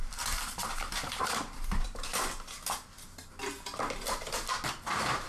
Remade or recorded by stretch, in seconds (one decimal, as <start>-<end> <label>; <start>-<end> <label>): 0.0-2.1 remade; 2.1-4.8 recorded; 4.8-5.3 remade